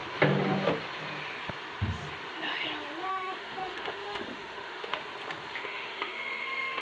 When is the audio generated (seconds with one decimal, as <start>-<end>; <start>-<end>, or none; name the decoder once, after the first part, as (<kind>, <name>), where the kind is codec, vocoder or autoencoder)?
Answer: 3.1-5.0 (autoencoder, DAC-VAE); 5.6-6.8